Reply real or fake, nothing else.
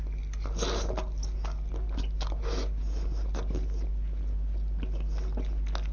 real